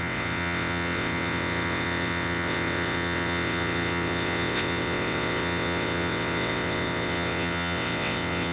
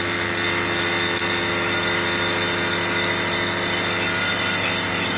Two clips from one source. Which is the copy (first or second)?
first